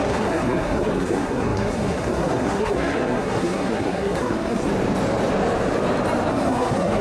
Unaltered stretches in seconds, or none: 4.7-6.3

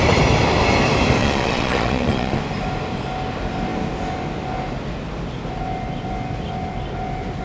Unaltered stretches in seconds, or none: 0.0-1.2; 2.4-7.4